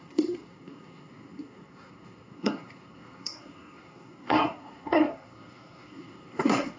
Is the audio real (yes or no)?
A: no